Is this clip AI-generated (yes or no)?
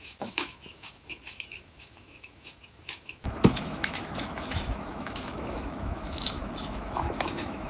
yes